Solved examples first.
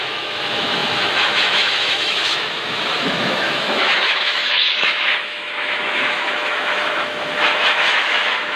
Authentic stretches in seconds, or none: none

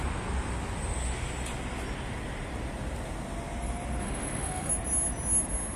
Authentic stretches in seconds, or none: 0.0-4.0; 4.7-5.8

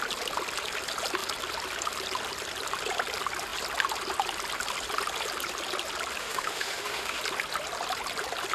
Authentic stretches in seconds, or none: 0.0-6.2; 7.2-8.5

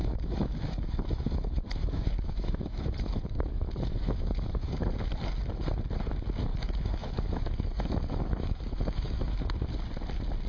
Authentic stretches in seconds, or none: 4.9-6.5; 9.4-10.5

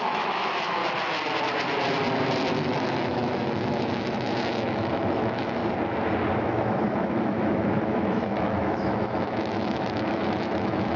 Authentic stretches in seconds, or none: 0.8-2.5; 5.6-6.4

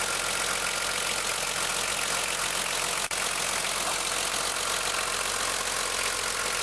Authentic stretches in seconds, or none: 0.0-6.6

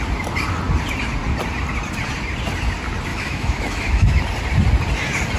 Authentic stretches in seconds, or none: 0.0-3.1; 4.2-5.4